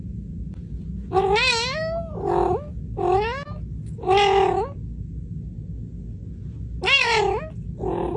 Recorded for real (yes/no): yes